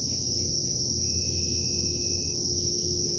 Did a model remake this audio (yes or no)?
no